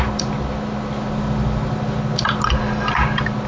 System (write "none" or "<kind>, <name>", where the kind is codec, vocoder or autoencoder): none